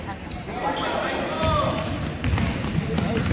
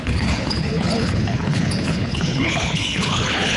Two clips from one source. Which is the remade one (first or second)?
second